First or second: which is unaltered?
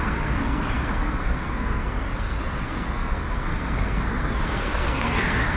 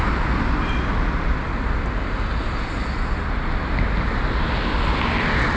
second